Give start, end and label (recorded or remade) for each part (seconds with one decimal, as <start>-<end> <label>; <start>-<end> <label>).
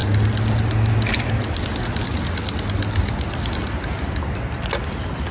0.0-5.3 recorded